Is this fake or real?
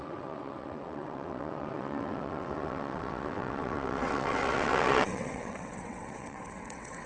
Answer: fake